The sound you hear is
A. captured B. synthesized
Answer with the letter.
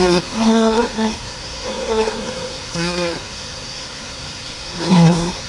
B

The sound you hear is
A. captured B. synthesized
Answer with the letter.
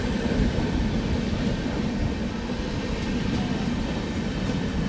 A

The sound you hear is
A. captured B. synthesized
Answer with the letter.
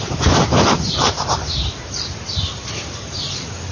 B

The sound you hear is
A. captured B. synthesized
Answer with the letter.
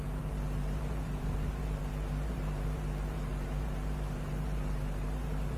B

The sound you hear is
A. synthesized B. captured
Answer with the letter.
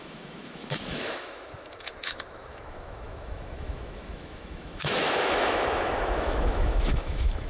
A